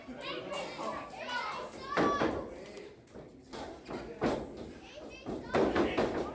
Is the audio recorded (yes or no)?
yes